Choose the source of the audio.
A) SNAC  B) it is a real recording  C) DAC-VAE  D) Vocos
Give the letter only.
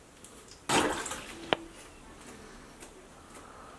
B